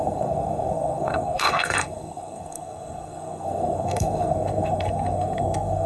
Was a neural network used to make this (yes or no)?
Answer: yes